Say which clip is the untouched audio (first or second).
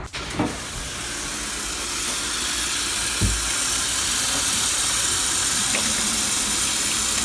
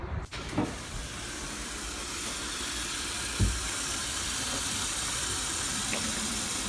first